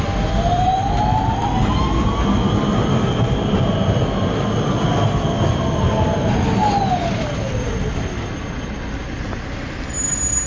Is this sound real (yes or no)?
yes